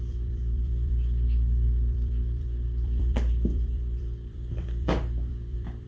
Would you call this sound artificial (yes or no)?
yes